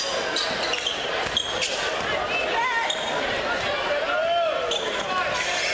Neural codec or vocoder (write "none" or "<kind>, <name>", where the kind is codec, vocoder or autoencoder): none